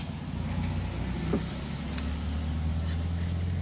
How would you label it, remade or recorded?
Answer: recorded